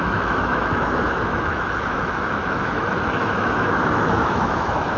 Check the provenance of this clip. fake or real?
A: fake